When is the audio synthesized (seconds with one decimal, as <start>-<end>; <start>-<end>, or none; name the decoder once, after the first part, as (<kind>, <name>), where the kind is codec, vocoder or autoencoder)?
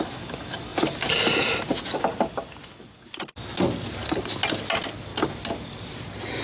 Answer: none